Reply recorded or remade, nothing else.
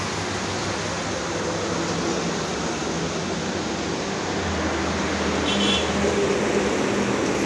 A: recorded